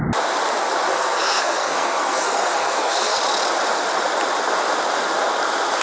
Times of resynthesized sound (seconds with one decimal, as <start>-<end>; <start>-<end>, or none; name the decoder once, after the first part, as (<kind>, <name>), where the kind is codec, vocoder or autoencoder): 0.9-3.2 (codec, SNAC)